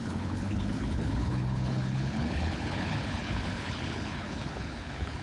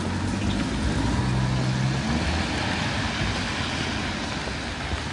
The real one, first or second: second